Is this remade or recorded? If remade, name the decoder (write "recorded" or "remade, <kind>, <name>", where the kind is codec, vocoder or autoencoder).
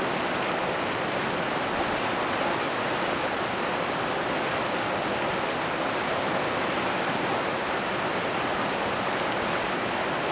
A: recorded